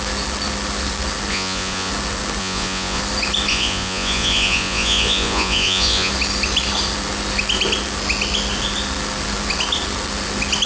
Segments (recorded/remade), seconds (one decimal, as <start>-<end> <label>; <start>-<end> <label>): 0.0-1.3 recorded; 1.3-1.9 remade; 1.9-2.4 recorded; 2.4-3.0 remade; 3.0-3.5 recorded; 3.5-6.1 remade; 6.1-10.7 recorded